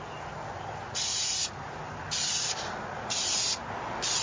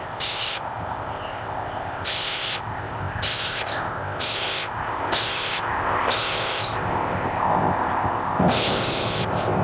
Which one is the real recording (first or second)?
first